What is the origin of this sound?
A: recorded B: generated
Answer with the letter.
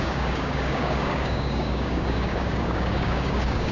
B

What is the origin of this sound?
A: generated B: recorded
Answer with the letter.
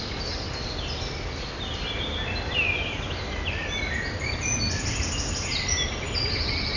B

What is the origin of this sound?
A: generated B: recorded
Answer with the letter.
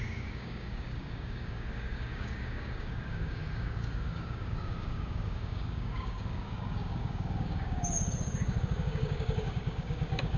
A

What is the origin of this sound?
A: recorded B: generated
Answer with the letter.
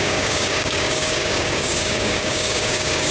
B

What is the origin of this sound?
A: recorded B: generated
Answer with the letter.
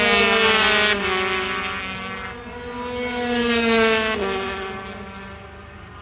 A